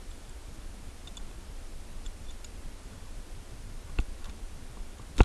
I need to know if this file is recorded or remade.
recorded